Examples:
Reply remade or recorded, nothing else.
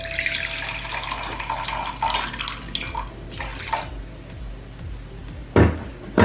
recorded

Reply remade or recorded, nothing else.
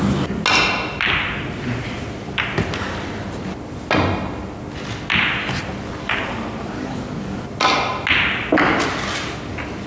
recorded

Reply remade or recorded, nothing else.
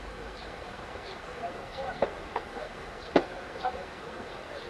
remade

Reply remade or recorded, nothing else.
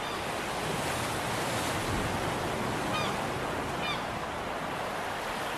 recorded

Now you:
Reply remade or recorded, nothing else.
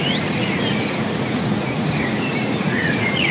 remade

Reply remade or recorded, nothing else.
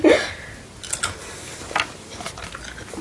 recorded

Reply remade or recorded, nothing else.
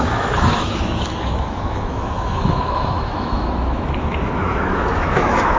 remade